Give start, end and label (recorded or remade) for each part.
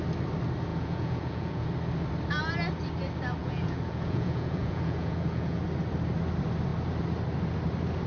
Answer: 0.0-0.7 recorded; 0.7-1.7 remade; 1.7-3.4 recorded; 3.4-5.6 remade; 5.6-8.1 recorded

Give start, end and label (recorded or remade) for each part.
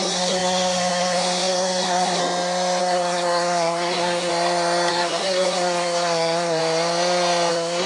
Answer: 0.0-2.2 remade; 2.2-2.8 recorded; 2.8-4.3 remade; 4.3-4.9 recorded; 4.9-6.6 remade; 6.6-7.5 recorded; 7.5-7.9 remade